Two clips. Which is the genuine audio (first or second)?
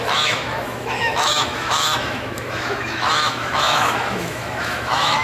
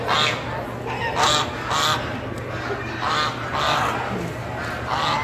second